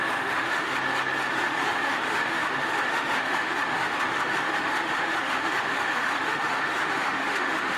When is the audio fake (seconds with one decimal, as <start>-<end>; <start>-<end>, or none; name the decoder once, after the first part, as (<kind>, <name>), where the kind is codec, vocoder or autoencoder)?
0.0-0.7 (autoencoder, DAC-VAE); 1.3-7.8